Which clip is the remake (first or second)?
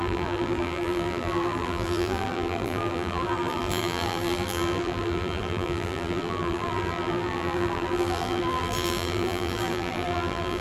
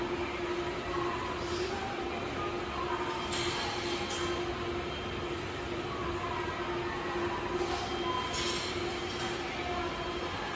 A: first